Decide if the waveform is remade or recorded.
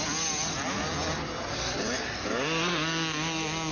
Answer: recorded